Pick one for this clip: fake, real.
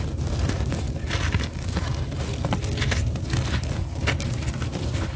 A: real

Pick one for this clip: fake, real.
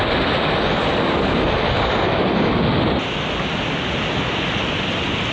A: real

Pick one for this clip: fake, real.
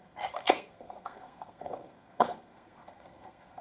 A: fake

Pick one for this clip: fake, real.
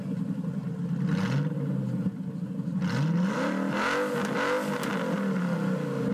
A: real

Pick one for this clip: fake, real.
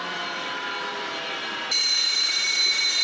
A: fake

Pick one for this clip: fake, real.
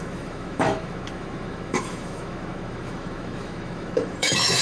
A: fake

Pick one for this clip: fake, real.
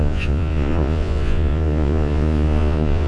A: fake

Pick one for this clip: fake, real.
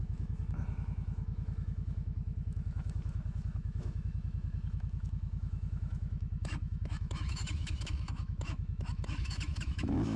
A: fake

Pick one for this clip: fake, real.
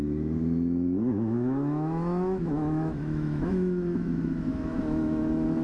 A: fake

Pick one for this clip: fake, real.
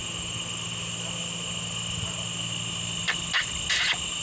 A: real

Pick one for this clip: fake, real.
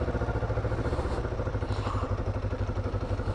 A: real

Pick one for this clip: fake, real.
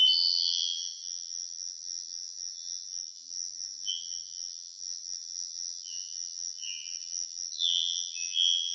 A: fake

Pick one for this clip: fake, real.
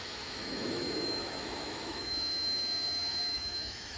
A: fake